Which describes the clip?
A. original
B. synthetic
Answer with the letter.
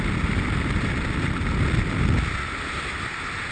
A